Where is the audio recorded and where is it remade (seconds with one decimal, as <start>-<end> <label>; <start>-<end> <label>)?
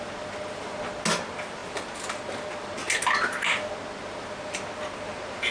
0.0-5.5 recorded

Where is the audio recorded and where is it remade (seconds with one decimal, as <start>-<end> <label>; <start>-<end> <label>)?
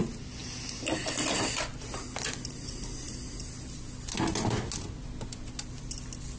0.0-6.4 recorded